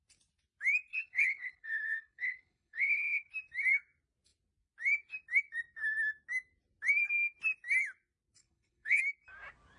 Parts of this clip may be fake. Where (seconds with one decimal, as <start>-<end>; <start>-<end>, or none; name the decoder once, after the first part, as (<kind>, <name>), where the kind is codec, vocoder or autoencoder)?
0.9-3.3 (codec, HILCodec); 8.4-9.0